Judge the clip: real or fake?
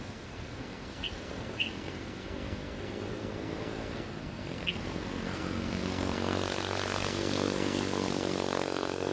fake